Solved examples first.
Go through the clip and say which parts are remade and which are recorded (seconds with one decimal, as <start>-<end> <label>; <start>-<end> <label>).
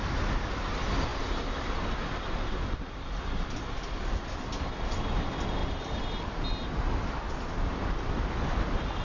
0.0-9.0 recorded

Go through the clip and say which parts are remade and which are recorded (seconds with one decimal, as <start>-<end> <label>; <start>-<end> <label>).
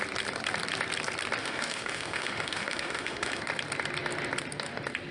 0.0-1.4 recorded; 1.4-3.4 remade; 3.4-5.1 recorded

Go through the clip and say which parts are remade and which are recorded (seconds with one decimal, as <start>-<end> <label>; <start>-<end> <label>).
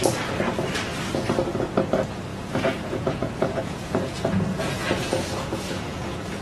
0.0-2.3 recorded; 2.3-6.4 remade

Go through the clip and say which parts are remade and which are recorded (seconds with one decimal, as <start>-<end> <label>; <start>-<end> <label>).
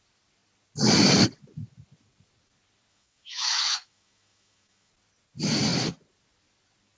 0.0-2.9 recorded; 2.9-4.9 remade; 4.9-7.0 recorded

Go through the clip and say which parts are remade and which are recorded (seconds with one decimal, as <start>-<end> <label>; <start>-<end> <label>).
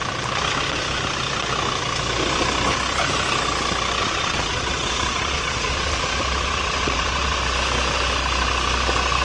0.0-4.0 recorded; 4.0-7.4 remade; 7.4-9.2 recorded